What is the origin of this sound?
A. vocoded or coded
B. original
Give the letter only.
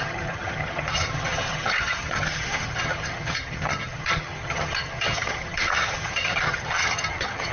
A